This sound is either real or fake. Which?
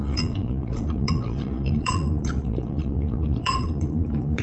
fake